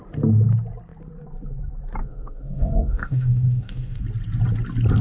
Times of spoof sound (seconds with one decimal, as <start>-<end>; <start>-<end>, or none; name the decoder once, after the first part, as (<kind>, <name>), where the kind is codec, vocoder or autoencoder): 2.0-4.0 (autoencoder, DAC-VAE)